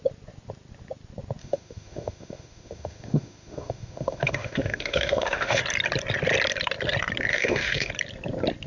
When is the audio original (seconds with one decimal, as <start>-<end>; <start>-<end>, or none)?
0.0-1.4; 5.6-7.3; 7.9-8.7